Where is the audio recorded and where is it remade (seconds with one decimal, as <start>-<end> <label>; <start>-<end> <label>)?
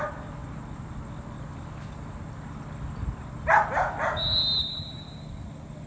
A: 0.0-5.9 recorded